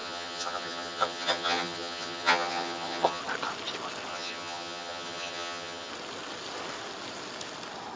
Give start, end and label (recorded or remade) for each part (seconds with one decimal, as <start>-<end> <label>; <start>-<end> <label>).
0.0-3.2 remade; 3.2-4.1 recorded; 4.1-5.9 remade; 5.9-8.0 recorded

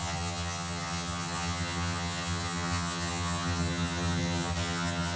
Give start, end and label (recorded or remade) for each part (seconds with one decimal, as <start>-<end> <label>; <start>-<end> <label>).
0.0-5.2 remade

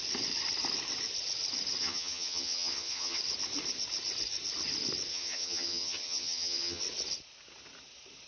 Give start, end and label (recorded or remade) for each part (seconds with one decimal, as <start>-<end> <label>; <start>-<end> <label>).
0.0-1.8 recorded; 1.8-3.2 remade; 3.2-5.1 recorded; 5.1-6.8 remade; 6.8-8.3 recorded

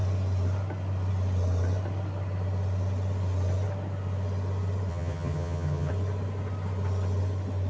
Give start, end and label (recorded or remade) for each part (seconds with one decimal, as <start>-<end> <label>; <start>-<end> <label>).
0.0-4.9 recorded; 4.9-5.9 remade; 5.9-7.7 recorded